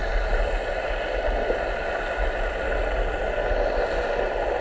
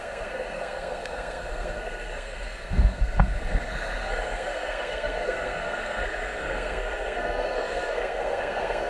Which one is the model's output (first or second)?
second